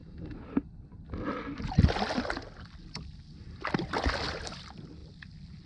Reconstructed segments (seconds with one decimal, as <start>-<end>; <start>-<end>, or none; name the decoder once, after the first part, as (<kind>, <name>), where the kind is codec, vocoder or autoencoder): 3.4-5.0 (vocoder, BigVGAN v2)